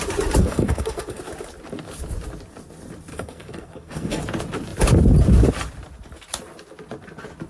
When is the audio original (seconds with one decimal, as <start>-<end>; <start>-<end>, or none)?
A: 0.0-0.4; 1.2-3.1; 4.2-7.5